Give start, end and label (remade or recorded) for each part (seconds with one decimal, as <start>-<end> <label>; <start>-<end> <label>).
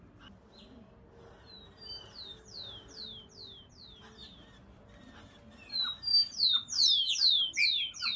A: 0.0-8.2 recorded